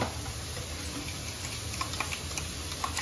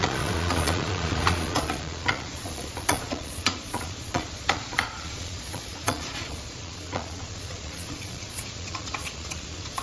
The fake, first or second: second